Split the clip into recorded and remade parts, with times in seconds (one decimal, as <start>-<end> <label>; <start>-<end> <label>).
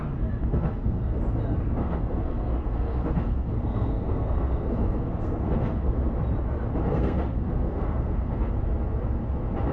0.0-0.4 recorded; 0.4-1.2 remade; 1.2-1.8 recorded; 1.8-6.0 remade; 6.0-6.9 recorded; 6.9-8.5 remade; 8.5-9.7 recorded